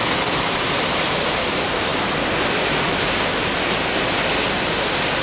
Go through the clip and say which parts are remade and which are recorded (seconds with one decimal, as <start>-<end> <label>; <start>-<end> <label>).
0.0-1.9 remade; 1.9-3.8 recorded; 3.8-5.2 remade